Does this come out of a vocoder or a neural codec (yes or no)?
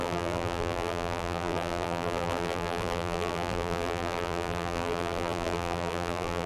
yes